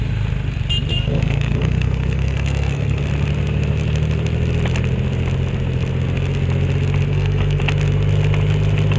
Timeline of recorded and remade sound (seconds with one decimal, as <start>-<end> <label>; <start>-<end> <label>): 0.0-0.9 recorded; 0.9-3.0 remade; 3.0-7.1 recorded; 7.1-7.6 remade; 7.6-9.0 recorded